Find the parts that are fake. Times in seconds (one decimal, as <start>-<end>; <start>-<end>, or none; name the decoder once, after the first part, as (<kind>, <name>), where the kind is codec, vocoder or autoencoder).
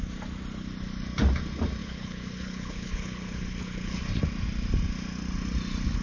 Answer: 1.8-4.0 (codec, HILCodec)